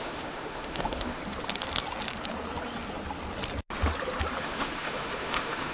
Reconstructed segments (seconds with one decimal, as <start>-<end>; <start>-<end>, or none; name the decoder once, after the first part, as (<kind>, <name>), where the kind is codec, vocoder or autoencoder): 0.0-1.2 (autoencoder, DAC-VAE); 4.4-5.7